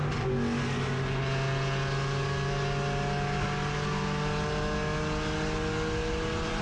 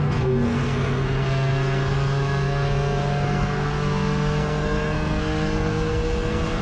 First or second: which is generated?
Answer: second